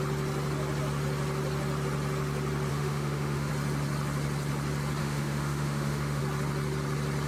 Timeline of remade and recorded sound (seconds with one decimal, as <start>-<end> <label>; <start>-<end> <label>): 0.0-2.7 recorded; 2.7-3.5 remade; 3.5-5.0 recorded; 5.0-6.2 remade; 6.2-7.3 recorded